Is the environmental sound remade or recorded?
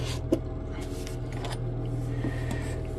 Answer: recorded